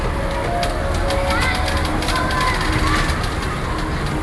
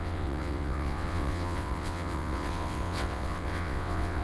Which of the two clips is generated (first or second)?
second